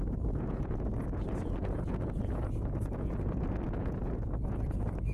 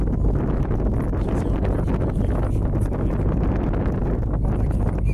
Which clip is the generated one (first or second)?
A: first